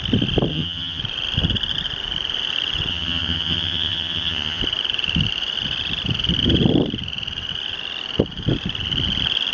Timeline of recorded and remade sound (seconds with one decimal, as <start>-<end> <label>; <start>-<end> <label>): 0.0-0.5 recorded; 0.5-1.0 remade; 1.0-2.9 recorded; 2.9-4.6 remade; 4.6-9.5 recorded